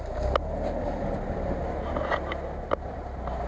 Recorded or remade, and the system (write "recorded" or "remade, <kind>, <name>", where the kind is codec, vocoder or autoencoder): recorded